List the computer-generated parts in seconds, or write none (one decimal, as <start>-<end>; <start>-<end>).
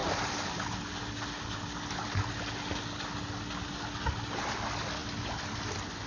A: none